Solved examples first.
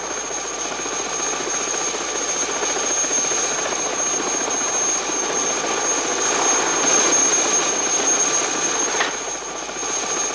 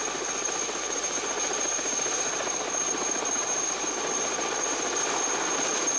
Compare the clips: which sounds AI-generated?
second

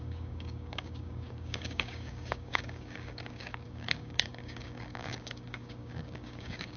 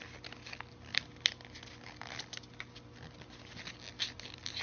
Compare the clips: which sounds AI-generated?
first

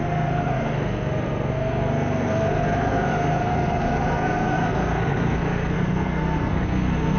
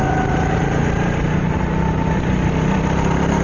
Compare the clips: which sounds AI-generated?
first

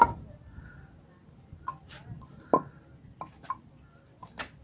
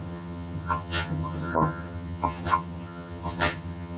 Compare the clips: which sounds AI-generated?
second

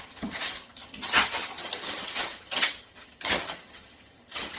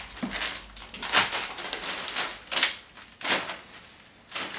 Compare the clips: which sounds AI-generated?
first